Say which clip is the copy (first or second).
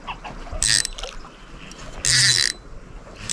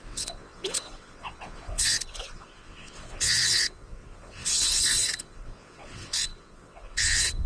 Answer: second